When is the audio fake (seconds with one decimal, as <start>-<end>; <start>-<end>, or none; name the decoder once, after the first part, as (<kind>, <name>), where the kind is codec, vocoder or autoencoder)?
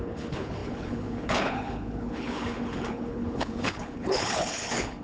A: 0.0-5.0 (codec, HILCodec)